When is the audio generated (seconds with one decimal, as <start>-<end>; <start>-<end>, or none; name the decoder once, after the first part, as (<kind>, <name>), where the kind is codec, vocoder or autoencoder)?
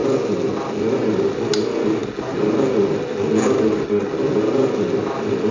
none